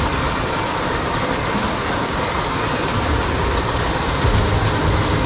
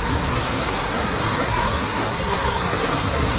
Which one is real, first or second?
first